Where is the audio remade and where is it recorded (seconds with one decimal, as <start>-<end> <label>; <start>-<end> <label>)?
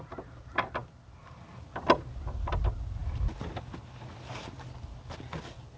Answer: 0.0-5.8 recorded